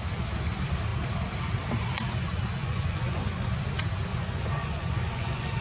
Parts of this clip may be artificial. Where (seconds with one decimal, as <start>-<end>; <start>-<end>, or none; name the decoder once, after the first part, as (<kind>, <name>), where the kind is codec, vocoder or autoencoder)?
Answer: 2.6-3.5 (vocoder, Vocos); 4.1-5.6